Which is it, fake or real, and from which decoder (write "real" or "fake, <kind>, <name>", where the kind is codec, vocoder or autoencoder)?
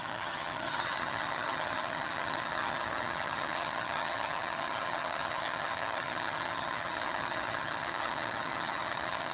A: fake, vocoder, HiFi-GAN